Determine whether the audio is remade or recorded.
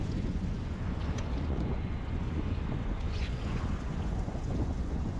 remade